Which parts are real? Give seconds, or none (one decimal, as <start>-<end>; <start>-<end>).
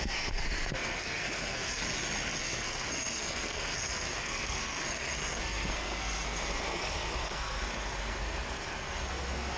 1.8-2.4